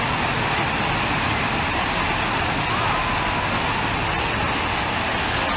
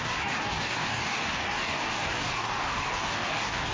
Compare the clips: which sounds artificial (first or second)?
second